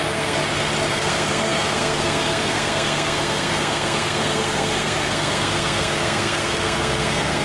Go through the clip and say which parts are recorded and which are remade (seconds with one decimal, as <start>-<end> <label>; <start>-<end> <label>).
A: 0.0-0.4 remade; 0.4-0.9 recorded; 0.9-7.4 remade